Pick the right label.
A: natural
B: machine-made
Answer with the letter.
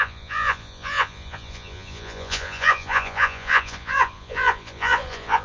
B